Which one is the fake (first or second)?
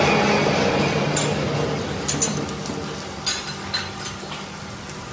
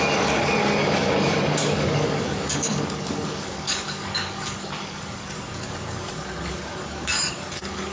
second